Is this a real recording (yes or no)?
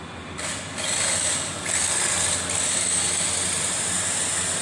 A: yes